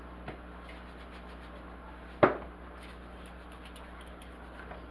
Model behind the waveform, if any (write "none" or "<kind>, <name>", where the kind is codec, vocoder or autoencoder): none